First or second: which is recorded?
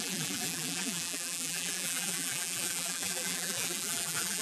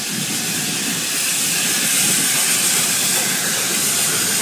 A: second